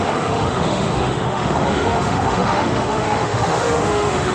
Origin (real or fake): fake